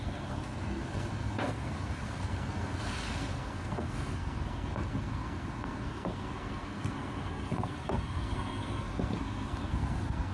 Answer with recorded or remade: remade